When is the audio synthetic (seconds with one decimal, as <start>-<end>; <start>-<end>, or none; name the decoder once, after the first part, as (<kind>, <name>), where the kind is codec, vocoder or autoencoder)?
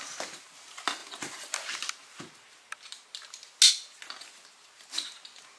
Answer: none